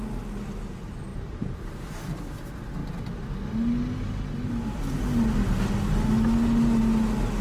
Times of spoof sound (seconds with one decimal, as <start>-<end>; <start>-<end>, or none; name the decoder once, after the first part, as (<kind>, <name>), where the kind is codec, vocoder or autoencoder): 1.1-1.9 (vocoder, BigVGAN v2)